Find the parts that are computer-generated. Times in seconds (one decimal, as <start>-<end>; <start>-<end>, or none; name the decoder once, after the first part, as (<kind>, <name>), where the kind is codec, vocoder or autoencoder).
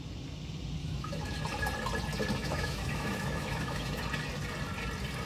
0.8-1.4 (autoencoder, DAC-VAE); 2.4-4.0